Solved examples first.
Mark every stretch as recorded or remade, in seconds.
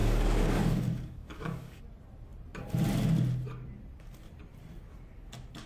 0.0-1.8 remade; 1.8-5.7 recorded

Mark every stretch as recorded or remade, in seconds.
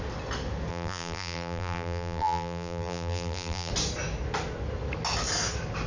0.0-0.7 recorded; 0.7-3.7 remade; 3.7-5.9 recorded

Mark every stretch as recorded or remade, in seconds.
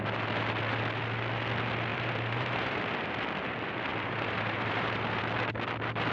0.0-1.9 recorded; 1.9-2.9 remade; 2.9-3.9 recorded; 3.9-5.2 remade; 5.2-6.1 recorded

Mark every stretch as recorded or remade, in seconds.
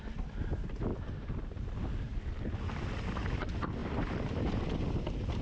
0.0-3.8 recorded; 3.8-5.0 remade; 5.0-5.4 recorded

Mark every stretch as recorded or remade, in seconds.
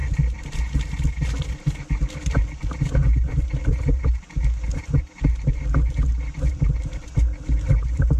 0.0-8.2 recorded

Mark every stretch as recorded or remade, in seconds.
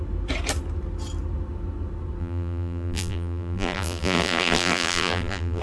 0.0-2.2 recorded; 2.2-5.6 remade